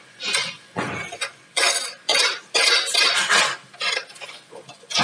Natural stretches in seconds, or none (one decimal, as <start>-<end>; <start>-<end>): 2.1-4.3